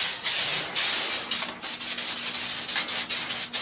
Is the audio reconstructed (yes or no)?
no